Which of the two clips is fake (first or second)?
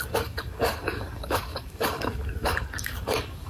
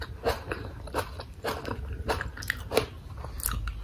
first